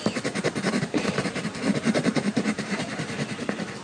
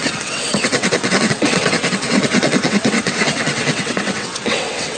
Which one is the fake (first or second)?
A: second